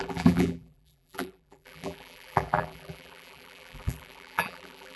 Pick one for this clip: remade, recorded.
remade